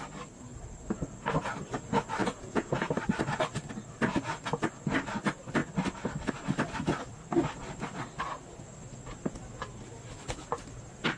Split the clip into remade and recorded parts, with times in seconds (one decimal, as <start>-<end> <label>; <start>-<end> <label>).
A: 0.0-2.2 recorded; 2.2-2.9 remade; 2.9-11.2 recorded